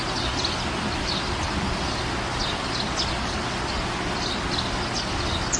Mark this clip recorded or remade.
recorded